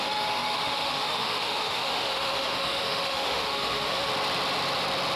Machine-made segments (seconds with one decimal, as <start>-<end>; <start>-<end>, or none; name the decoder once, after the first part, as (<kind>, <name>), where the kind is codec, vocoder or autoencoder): 0.0-4.1 (autoencoder, DAC-VAE)